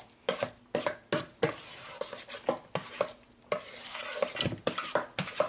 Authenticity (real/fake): real